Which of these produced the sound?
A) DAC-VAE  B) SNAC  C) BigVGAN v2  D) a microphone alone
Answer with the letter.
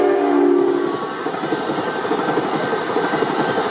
D